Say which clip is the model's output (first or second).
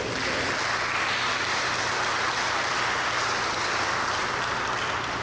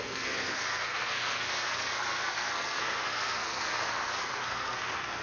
second